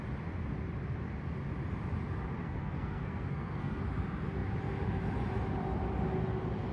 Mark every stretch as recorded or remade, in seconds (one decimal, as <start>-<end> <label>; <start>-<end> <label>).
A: 0.0-2.4 recorded; 2.4-3.8 remade; 3.8-6.7 recorded